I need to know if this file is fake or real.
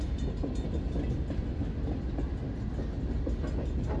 real